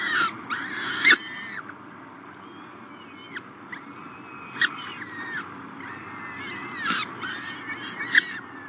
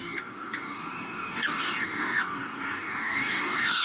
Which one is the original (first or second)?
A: first